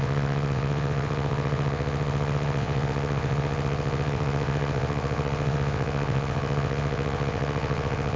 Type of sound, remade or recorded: remade